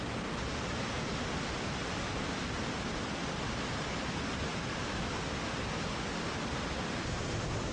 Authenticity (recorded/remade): recorded